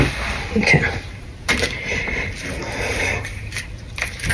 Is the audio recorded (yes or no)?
no